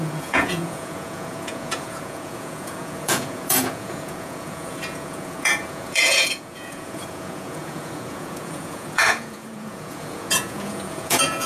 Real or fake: fake